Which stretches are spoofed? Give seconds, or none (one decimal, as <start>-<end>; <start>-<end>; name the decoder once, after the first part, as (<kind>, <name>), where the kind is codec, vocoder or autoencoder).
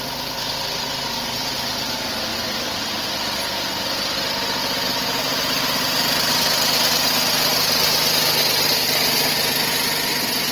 4.6-5.2 (autoencoder, DAC-VAE)